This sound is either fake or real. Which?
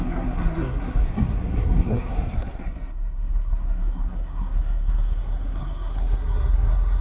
fake